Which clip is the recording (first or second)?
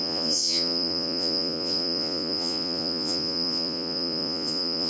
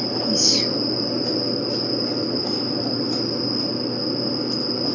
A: second